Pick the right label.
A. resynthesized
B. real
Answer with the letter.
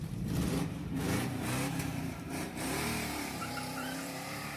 A